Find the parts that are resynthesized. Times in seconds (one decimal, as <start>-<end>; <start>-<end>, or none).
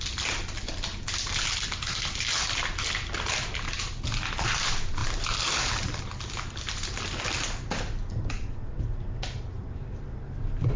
5.0-6.0